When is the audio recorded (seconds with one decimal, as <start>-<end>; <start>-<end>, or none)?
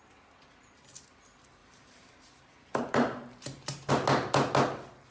0.0-1.6; 3.9-5.1